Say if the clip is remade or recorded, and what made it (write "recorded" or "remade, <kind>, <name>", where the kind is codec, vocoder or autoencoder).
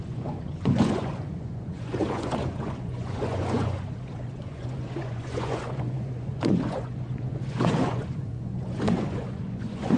remade, vocoder, Vocos